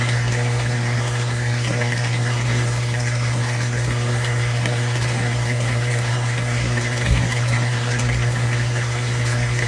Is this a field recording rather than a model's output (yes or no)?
no